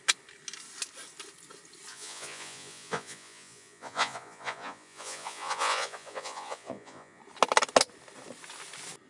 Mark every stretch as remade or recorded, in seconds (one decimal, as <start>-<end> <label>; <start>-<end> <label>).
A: 0.0-1.9 recorded; 1.9-7.2 remade; 7.2-9.1 recorded